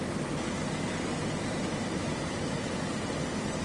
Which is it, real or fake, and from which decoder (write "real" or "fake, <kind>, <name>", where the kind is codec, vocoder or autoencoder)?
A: real